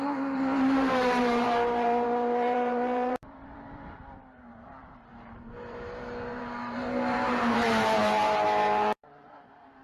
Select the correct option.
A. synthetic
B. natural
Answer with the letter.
A